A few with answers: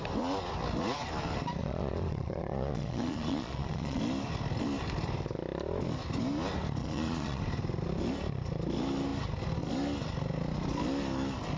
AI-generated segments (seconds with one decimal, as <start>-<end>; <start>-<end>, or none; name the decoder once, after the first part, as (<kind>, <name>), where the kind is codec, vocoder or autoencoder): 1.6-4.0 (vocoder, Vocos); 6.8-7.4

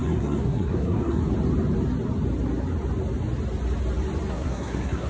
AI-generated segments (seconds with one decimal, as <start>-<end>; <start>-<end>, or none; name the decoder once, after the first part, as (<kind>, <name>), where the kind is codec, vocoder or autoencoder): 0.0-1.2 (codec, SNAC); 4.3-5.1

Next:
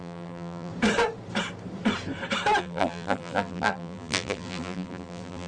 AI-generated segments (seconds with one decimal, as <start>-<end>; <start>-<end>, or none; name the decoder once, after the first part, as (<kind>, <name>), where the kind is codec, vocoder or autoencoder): 0.0-0.7 (vocoder, BigVGAN v2); 2.6-5.5